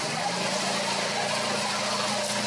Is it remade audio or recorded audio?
recorded